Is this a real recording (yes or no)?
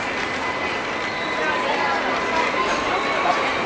yes